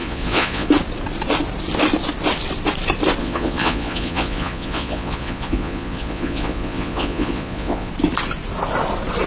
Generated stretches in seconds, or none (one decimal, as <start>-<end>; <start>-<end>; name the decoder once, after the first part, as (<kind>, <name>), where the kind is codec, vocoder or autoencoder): 0.0-0.7 (vocoder, Vocos); 3.2-7.9